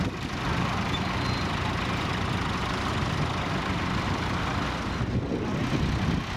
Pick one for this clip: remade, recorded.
recorded